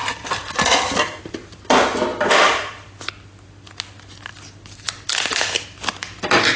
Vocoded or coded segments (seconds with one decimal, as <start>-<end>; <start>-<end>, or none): 0.0-1.2; 2.1-2.9